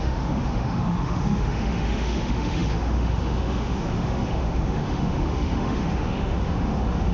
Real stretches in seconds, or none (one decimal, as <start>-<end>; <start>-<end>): none